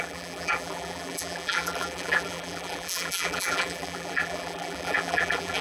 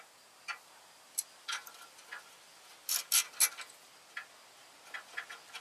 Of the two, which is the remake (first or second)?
first